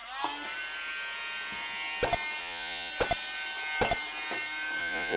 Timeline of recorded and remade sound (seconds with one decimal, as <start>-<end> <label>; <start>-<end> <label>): 0.0-2.4 recorded; 2.4-2.9 remade; 2.9-4.8 recorded; 4.8-5.2 remade

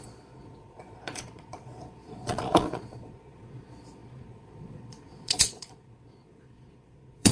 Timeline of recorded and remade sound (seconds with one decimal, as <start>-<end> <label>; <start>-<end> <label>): 0.0-7.3 remade

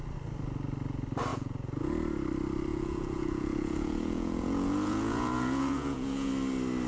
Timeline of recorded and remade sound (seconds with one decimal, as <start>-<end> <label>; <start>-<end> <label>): 0.0-1.3 recorded; 1.3-1.9 remade; 1.9-2.7 recorded; 2.7-6.3 remade; 6.3-6.9 recorded

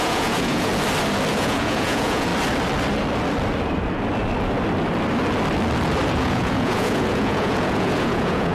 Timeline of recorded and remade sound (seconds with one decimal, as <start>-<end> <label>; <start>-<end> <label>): 0.0-0.7 remade; 0.7-1.3 recorded; 1.3-2.3 remade; 2.3-6.1 recorded; 6.1-8.5 remade

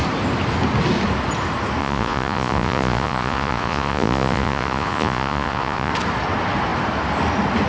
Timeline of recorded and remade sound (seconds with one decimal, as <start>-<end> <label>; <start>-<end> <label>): 0.0-1.8 recorded; 1.8-5.9 remade; 5.9-7.7 recorded

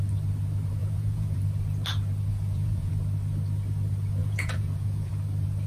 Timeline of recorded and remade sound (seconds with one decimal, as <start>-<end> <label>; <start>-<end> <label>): 0.0-0.8 recorded; 0.8-1.4 remade; 1.4-2.3 recorded; 2.3-2.9 remade; 2.9-4.2 recorded; 4.2-5.1 remade; 5.1-5.7 recorded